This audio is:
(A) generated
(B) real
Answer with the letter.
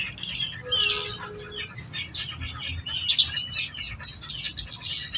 B